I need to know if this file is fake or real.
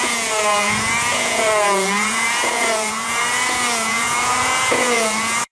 fake